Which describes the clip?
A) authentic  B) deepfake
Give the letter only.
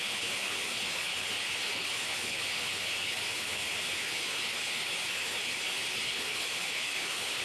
B